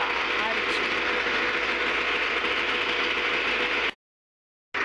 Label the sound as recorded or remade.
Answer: recorded